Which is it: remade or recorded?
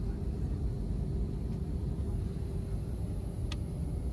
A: recorded